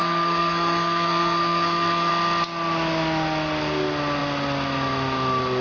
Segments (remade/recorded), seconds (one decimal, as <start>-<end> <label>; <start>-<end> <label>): 0.0-2.1 remade; 2.1-5.6 recorded